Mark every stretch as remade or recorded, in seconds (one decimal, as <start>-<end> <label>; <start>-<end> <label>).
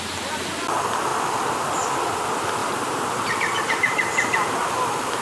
0.0-2.6 recorded; 2.6-4.1 remade; 4.1-5.2 recorded